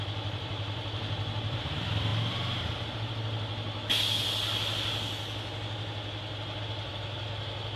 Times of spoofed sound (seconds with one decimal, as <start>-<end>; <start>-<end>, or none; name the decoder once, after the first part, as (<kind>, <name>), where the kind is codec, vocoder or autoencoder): 0.0-2.1 (vocoder, BigVGAN v2); 6.6-7.8

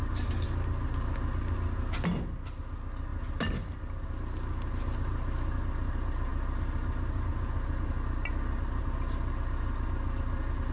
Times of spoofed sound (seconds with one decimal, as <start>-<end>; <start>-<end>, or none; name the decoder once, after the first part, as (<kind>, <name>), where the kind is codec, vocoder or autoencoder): none

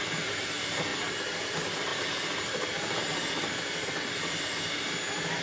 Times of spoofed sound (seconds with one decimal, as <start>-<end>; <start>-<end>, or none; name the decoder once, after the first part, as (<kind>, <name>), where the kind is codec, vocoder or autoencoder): none

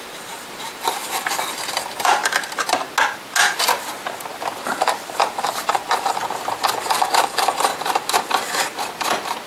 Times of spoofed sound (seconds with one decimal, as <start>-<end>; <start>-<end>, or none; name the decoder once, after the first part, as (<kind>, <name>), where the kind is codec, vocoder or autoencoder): 0.0-2.2 (vocoder, BigVGAN v2); 4.6-6.2; 6.8-7.7

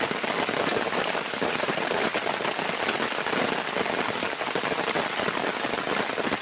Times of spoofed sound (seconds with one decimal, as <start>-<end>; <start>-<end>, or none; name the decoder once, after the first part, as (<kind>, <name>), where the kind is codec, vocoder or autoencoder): 0.7-2.4 (vocoder, BigVGAN v2)

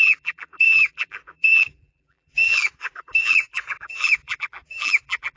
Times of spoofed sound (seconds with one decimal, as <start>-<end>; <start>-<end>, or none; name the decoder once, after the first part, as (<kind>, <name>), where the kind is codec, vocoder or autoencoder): 0.0-5.4 (vocoder, BigVGAN v2)